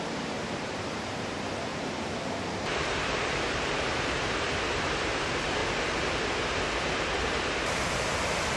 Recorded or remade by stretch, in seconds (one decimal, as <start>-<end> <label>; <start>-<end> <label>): 0.0-1.7 remade; 1.7-2.3 recorded; 2.3-5.6 remade; 5.6-7.1 recorded; 7.1-8.6 remade